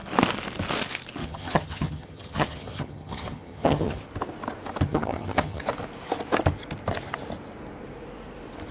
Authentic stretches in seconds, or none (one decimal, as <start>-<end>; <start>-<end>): 0.0-1.2; 4.0-4.9; 5.6-8.7